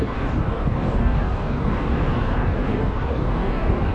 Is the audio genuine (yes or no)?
no